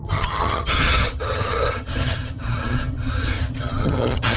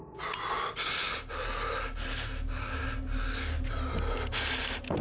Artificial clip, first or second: first